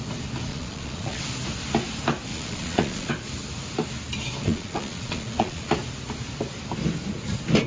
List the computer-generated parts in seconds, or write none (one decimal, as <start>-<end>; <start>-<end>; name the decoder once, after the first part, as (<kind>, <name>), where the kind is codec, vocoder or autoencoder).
0.5-1.2 (vocoder, Vocos); 2.3-3.1; 4.4-5.7